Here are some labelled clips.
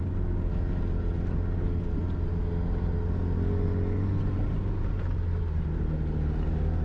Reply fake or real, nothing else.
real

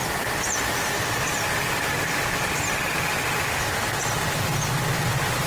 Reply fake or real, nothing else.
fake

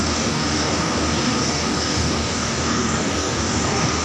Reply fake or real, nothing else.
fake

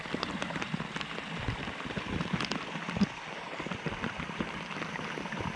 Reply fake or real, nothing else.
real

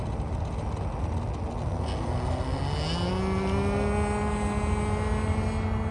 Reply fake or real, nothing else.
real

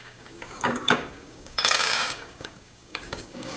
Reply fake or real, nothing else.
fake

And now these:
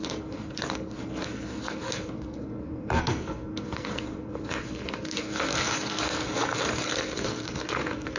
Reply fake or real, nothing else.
fake